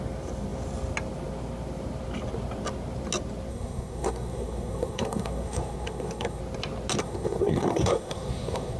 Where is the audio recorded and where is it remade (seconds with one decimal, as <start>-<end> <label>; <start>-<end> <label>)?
0.0-3.5 recorded; 3.5-6.4 remade; 6.4-7.0 recorded; 7.0-8.8 remade